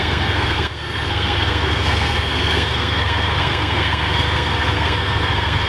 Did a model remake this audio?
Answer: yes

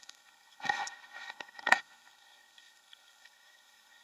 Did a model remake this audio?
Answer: yes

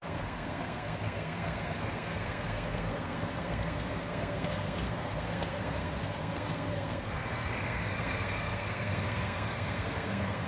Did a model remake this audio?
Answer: yes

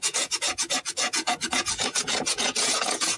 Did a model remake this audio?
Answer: yes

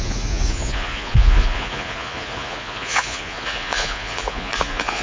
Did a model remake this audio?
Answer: yes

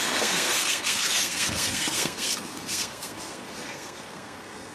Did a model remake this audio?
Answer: yes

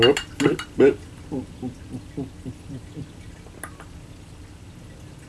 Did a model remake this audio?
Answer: no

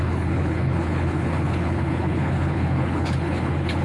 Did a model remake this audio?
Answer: yes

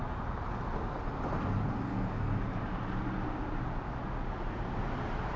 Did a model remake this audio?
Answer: no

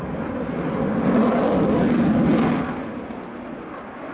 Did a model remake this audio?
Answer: no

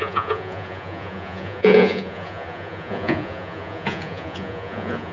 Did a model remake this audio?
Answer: yes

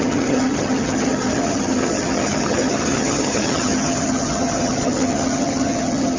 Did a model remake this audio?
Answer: yes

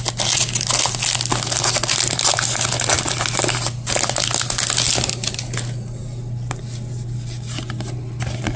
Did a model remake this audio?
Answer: no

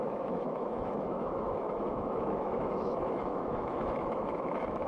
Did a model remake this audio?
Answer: yes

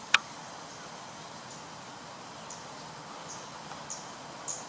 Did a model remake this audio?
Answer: no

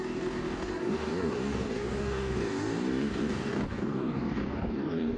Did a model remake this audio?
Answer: yes